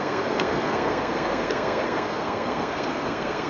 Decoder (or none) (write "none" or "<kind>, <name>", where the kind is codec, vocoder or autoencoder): codec, SNAC